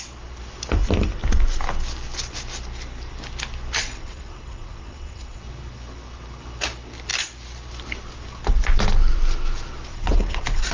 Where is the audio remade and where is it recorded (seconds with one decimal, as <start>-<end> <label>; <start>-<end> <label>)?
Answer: 0.0-3.8 recorded; 3.8-5.4 remade; 5.4-9.9 recorded; 9.9-10.7 remade